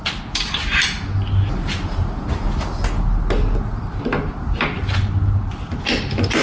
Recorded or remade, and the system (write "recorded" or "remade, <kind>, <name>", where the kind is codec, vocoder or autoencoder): recorded